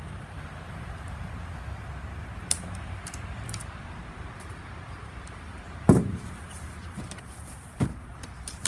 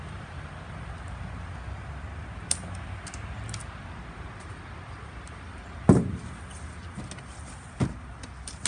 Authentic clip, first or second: second